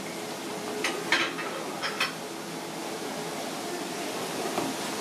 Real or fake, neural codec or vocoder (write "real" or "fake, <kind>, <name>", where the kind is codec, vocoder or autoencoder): real